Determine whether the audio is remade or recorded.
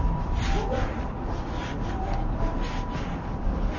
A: recorded